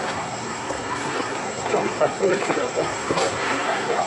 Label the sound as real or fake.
fake